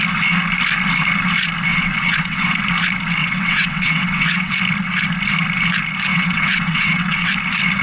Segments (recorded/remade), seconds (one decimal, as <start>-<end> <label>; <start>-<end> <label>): 0.0-1.7 recorded; 1.7-2.6 remade; 2.6-3.2 recorded; 3.2-4.5 remade; 4.5-6.1 recorded; 6.1-7.3 remade; 7.3-7.8 recorded

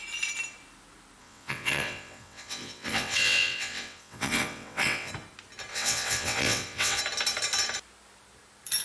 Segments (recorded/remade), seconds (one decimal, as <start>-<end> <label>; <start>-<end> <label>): 0.0-1.2 recorded; 1.2-5.1 remade; 5.1-5.7 recorded; 5.7-7.0 remade; 7.0-8.8 recorded

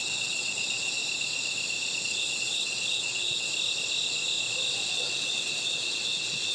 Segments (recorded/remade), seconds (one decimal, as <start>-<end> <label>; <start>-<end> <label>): 0.0-1.0 remade; 1.0-2.0 recorded; 2.0-3.5 remade; 3.5-4.9 recorded; 4.9-6.5 remade

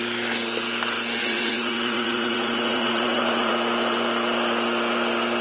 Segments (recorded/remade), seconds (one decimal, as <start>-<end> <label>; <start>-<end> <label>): 0.0-1.2 recorded; 1.2-3.5 remade; 3.5-5.4 recorded

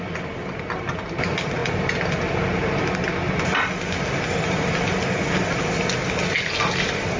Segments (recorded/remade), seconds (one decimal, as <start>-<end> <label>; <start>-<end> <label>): 0.0-7.2 recorded

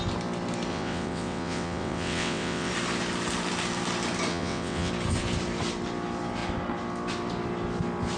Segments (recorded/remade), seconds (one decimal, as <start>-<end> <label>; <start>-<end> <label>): 0.0-0.7 recorded; 0.7-2.7 remade; 2.7-4.3 recorded; 4.3-4.9 remade; 4.9-8.2 recorded

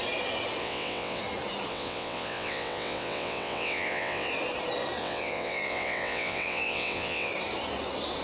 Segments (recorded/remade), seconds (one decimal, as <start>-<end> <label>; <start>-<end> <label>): 0.0-0.6 recorded; 0.6-1.2 remade; 1.2-1.7 recorded; 1.7-4.3 remade; 4.3-5.0 recorded; 5.0-7.3 remade; 7.3-8.2 recorded